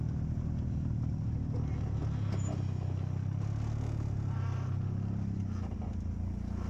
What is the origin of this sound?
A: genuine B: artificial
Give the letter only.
A